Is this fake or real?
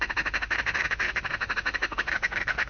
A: fake